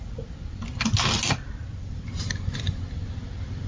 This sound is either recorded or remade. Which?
recorded